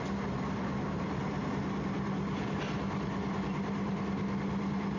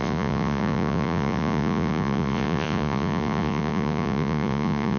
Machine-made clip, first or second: second